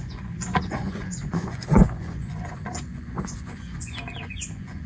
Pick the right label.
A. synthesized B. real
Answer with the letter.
A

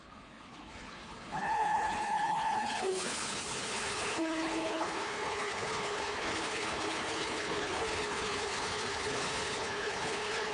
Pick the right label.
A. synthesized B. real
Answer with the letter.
A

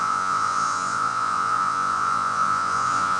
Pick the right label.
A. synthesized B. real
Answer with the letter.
A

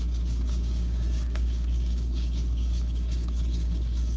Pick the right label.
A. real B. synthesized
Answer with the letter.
B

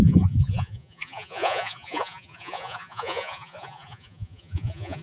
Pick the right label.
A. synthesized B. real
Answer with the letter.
A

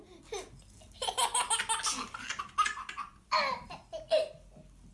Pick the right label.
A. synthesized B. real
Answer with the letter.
B